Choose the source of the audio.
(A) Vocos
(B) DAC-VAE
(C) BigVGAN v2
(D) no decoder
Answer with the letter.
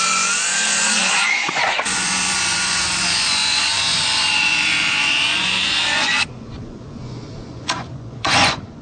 A